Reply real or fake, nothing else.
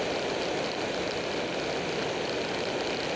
real